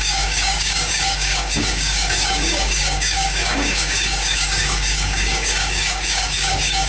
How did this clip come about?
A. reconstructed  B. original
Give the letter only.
A